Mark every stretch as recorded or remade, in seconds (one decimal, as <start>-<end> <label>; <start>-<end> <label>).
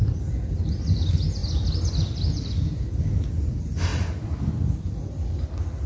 0.0-5.9 recorded